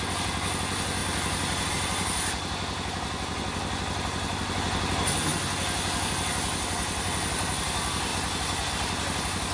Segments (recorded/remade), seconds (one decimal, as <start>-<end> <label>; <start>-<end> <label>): 0.0-9.5 recorded